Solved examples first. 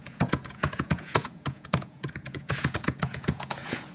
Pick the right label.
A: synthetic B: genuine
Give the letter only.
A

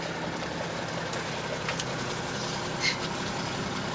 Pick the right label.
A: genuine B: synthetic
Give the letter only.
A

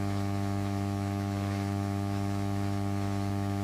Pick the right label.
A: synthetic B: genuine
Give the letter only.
A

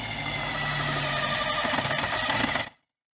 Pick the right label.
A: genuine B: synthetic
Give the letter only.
A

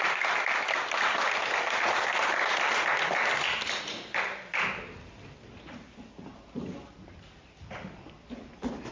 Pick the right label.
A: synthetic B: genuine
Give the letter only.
B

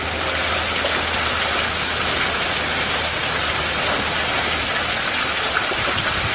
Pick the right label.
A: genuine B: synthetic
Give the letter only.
A